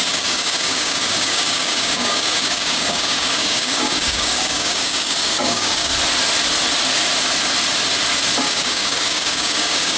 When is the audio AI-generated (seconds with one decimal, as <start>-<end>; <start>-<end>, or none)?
0.0-5.9; 8.4-10.0